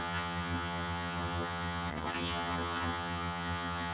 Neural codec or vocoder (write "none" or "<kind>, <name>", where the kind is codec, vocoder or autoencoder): vocoder, HiFi-GAN